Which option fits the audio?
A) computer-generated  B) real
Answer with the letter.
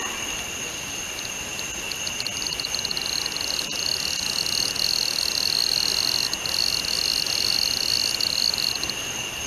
B